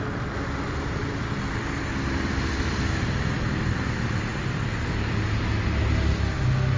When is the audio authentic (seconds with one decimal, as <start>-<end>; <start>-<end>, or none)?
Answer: 0.0-6.8